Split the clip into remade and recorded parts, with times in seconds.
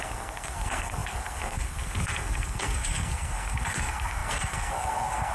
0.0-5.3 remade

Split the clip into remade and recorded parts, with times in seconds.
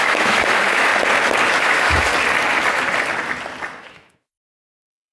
0.0-0.9 remade; 0.9-1.6 recorded; 1.6-2.1 remade; 2.1-3.8 recorded; 3.8-5.1 remade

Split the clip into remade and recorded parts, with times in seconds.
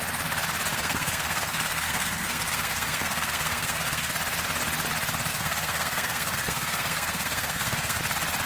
0.0-0.7 recorded; 0.7-4.1 remade; 4.1-5.3 recorded; 5.3-8.0 remade; 8.0-8.5 recorded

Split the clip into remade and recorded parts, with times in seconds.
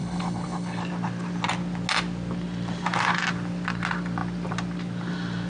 0.0-0.8 remade; 0.8-5.5 recorded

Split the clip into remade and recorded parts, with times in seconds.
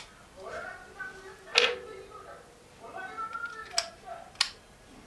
0.0-5.1 recorded